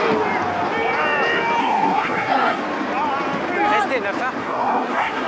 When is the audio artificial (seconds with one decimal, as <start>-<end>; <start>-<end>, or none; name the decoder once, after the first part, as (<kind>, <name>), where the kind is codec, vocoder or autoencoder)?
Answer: 1.6-2.6 (codec, SNAC); 4.4-5.3